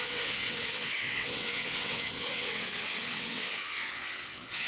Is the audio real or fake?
fake